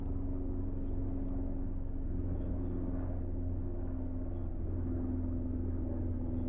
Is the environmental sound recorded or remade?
recorded